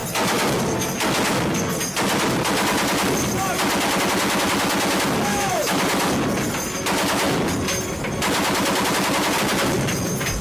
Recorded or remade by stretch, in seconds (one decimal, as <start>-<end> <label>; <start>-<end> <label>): 0.0-5.3 recorded; 5.3-5.8 remade; 5.8-10.4 recorded

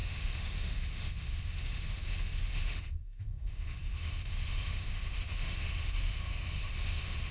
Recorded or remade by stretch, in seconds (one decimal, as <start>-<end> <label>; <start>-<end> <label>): 0.0-7.3 remade

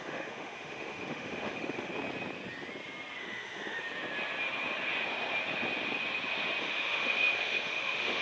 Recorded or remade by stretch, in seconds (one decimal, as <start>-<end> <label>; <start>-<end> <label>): 0.0-1.9 remade; 1.9-3.2 recorded; 3.2-3.8 remade; 3.8-6.6 recorded; 6.6-8.2 remade

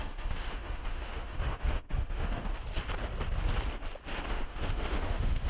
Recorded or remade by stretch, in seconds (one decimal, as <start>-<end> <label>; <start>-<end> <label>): 0.0-2.5 remade; 2.5-4.3 recorded; 4.3-5.5 remade

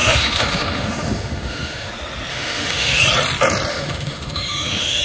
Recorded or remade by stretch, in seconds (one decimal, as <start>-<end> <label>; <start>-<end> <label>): 0.0-1.9 remade; 1.9-2.3 recorded; 2.3-3.0 remade; 3.0-3.7 recorded; 3.7-5.0 remade

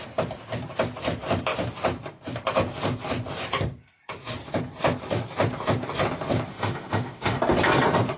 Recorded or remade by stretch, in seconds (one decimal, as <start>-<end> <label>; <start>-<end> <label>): 0.0-6.5 recorded; 6.5-7.4 remade; 7.4-8.2 recorded